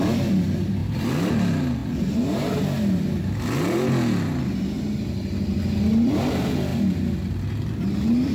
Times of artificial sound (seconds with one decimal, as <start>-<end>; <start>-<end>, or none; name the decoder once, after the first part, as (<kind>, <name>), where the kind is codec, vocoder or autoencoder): 0.0-0.8 (vocoder, BigVGAN v2); 1.3-1.8; 5.8-8.3